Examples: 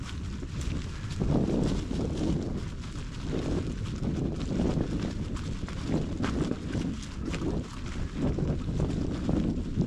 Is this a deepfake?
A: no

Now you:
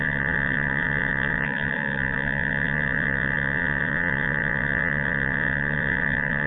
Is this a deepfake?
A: yes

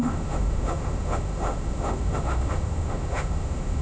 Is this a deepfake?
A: yes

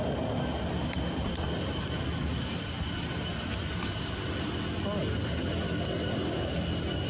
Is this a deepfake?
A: no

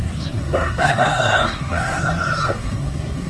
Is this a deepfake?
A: yes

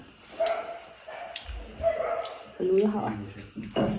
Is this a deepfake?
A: no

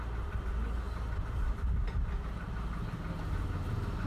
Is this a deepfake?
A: no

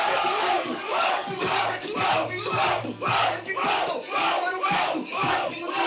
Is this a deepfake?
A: yes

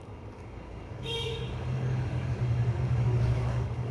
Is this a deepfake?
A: yes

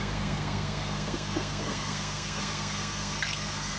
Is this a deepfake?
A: yes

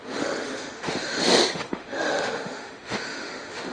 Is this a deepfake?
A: yes